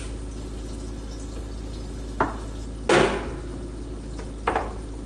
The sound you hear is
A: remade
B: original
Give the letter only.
B